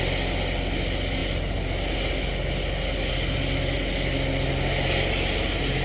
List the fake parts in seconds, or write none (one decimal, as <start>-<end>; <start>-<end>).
none